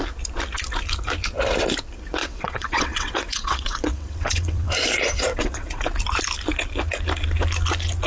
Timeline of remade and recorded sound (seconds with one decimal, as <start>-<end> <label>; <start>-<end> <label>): 0.0-2.2 recorded; 2.2-4.7 remade; 4.7-5.3 recorded; 5.3-5.8 remade; 5.8-8.1 recorded